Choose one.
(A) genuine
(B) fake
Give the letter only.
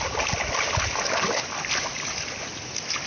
A